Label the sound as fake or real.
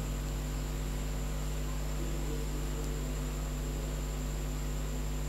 real